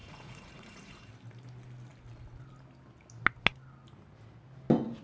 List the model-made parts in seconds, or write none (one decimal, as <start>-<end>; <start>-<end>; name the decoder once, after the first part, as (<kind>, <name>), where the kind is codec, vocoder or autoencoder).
0.0-1.1 (vocoder, Vocos)